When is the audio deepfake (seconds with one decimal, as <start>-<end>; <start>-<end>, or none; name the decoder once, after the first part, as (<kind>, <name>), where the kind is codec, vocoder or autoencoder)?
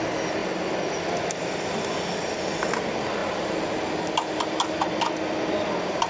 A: none